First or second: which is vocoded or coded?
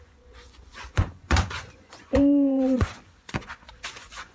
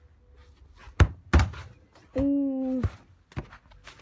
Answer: first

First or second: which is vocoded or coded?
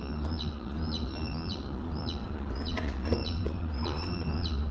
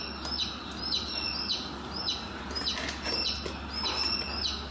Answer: first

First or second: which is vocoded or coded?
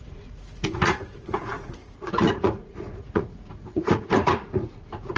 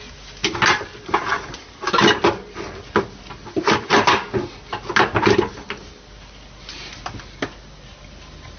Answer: first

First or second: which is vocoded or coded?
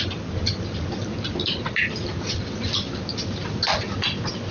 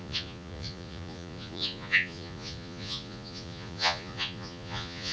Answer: second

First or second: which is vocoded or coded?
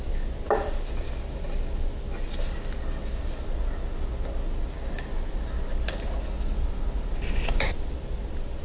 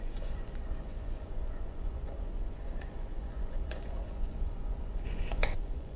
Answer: second